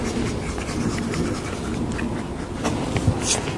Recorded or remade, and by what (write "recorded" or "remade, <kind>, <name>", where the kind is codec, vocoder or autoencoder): recorded